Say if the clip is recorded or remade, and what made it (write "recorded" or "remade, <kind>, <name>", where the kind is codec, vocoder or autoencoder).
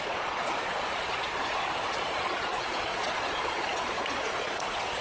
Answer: remade, vocoder, Vocos